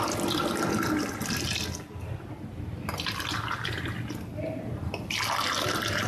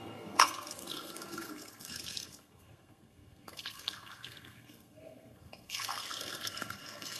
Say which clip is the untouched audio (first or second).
first